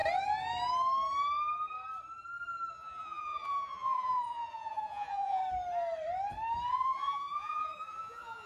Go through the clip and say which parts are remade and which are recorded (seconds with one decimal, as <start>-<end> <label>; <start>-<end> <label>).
0.0-2.7 recorded; 2.7-5.4 remade; 5.4-6.7 recorded; 6.7-8.5 remade